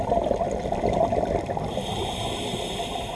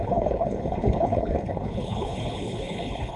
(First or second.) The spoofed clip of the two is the second